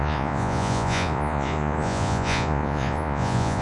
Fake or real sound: fake